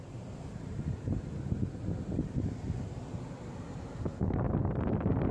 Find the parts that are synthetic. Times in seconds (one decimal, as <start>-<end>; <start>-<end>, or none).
4.1-5.3